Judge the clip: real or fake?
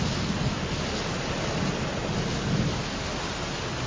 real